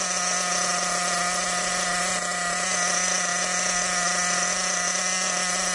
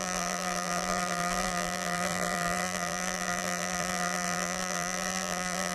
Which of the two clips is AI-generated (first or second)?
second